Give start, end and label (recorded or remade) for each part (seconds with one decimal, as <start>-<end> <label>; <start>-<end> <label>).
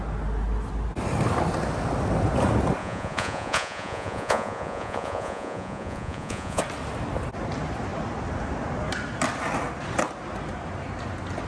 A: 0.0-2.8 recorded; 2.8-6.6 remade; 6.6-11.5 recorded